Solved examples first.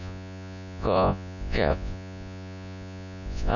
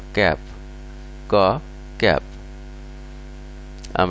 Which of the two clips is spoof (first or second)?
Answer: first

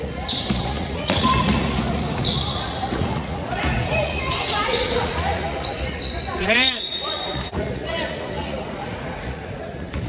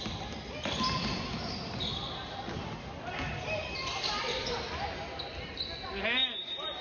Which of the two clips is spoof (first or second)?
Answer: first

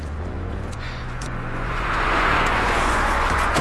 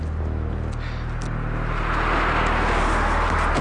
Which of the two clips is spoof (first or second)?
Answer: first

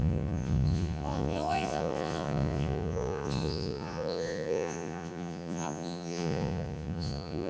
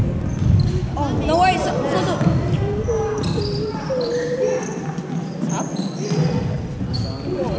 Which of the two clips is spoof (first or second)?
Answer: first